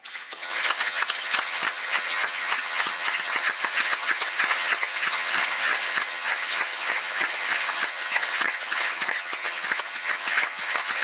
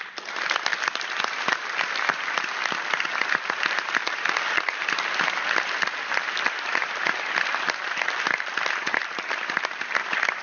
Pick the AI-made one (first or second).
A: first